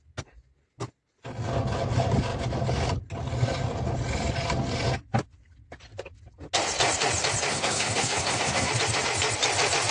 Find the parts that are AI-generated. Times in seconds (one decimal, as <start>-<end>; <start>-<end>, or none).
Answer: 7.5-8.7